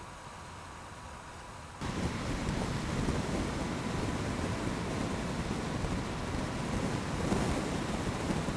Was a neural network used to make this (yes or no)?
no